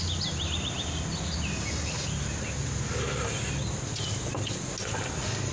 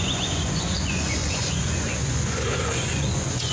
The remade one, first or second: second